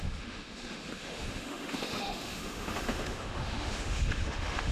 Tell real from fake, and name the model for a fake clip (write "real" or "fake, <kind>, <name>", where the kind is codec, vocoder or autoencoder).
fake, autoencoder, DAC-VAE